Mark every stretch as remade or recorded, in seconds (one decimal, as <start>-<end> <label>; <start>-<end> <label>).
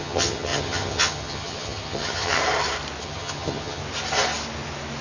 0.0-2.4 remade; 2.4-3.0 recorded; 3.0-3.8 remade; 3.8-5.0 recorded